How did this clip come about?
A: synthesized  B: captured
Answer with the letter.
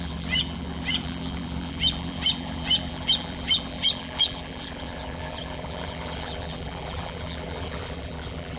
A